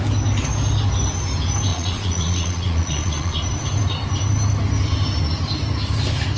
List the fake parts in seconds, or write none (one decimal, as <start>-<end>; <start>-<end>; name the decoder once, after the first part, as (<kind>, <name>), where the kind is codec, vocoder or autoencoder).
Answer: 1.7-3.4 (vocoder, Vocos)